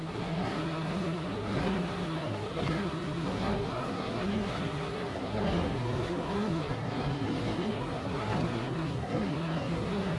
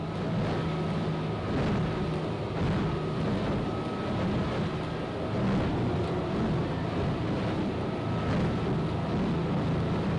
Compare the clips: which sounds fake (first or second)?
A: first